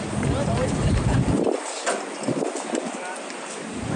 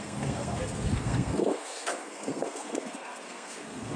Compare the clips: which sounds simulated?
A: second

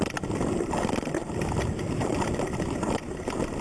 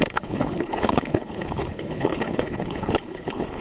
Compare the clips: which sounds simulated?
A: second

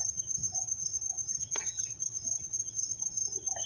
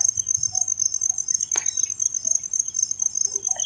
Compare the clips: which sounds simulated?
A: first